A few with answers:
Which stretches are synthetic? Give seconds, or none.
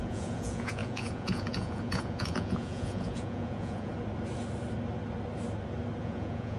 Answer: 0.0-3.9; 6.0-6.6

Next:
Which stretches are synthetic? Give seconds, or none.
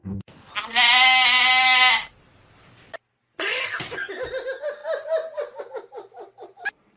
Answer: 0.0-0.5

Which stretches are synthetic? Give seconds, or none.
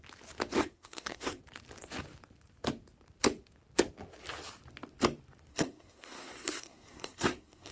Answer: 0.6-1.4; 5.5-7.7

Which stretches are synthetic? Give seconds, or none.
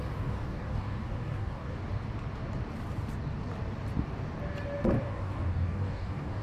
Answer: 0.0-1.8; 5.0-6.4